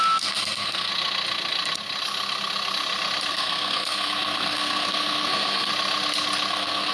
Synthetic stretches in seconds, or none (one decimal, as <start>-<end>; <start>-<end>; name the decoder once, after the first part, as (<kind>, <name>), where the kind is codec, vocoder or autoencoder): 0.0-0.9 (codec, SNAC); 3.3-5.7; 6.5-6.9